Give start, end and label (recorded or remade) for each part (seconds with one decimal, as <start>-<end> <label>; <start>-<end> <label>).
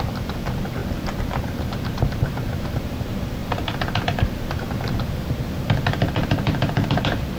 0.0-0.8 remade; 0.8-1.4 recorded; 1.4-7.4 remade